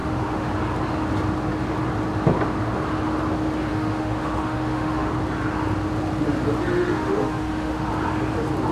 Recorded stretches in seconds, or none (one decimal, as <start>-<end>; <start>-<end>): 0.5-3.7; 5.1-6.7; 7.9-8.7